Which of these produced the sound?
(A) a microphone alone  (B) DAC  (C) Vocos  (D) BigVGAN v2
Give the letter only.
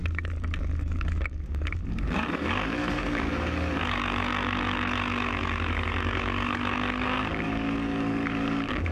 B